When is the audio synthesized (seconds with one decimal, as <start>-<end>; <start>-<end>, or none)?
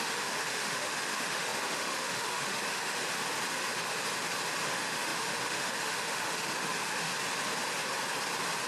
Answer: 0.0-3.0; 4.6-7.1